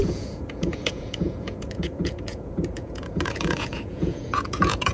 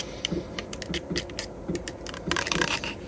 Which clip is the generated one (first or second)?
first